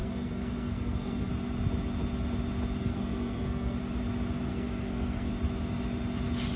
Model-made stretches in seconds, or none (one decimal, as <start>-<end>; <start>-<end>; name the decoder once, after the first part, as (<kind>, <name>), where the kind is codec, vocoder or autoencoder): 0.0-1.3 (codec, SNAC); 2.8-3.8; 4.5-5.3